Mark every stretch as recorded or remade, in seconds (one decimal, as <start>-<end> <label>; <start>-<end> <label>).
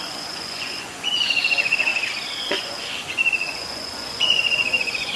0.0-1.9 remade; 1.9-2.4 recorded; 2.4-5.2 remade